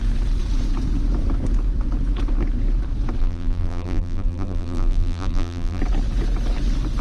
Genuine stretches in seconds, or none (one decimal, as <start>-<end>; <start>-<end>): 0.0-3.2; 5.8-7.0